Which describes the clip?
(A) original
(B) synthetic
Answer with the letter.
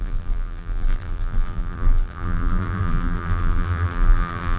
B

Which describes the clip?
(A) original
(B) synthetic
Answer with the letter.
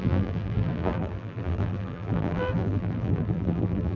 B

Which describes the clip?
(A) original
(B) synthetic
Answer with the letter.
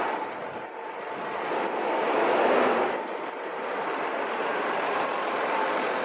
B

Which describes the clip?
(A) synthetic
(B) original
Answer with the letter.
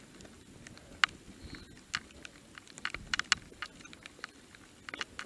B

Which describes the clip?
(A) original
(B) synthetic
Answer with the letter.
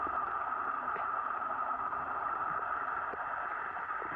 B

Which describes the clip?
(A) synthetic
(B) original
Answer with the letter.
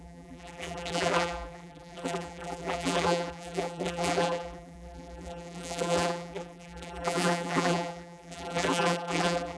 A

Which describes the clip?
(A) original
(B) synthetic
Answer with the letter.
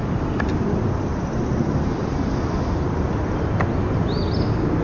A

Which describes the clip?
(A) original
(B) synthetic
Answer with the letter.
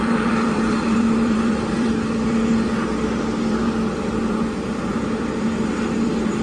B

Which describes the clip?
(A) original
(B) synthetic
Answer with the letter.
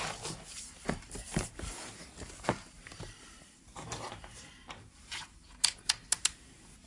B